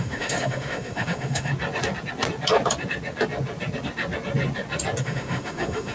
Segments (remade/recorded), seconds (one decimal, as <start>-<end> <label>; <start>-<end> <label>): 0.0-1.5 remade; 1.5-5.0 recorded; 5.0-5.9 remade